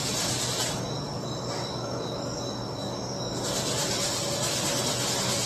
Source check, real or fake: real